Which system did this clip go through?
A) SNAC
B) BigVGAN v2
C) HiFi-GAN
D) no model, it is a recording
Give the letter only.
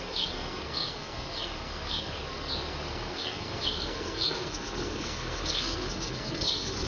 A